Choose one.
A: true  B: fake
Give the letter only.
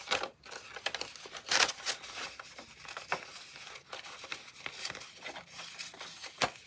A